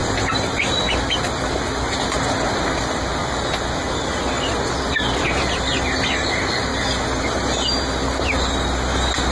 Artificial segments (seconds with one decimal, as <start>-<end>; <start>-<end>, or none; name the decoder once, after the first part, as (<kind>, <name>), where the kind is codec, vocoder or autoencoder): 5.2-6.3 (vocoder, BigVGAN v2)